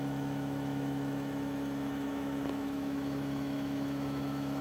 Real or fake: fake